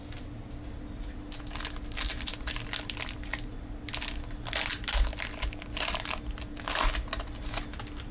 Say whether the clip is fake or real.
real